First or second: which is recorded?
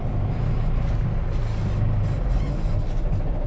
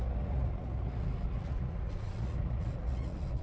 first